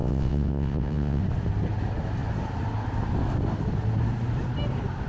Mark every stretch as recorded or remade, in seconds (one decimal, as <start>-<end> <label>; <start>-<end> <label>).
0.0-1.2 remade; 1.2-5.1 recorded